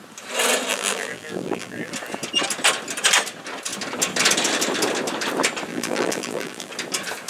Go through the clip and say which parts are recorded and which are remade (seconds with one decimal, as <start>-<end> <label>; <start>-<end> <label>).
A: 0.0-0.7 recorded; 0.7-1.9 remade; 1.9-5.7 recorded; 5.7-6.7 remade; 6.7-7.3 recorded